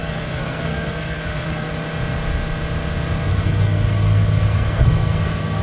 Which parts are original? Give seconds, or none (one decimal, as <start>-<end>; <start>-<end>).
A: 1.7-3.3